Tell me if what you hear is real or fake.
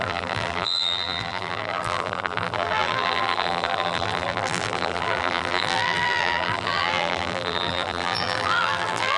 fake